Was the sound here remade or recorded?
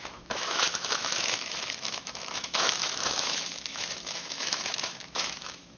remade